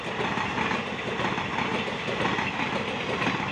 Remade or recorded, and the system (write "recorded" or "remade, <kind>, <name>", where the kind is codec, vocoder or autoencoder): recorded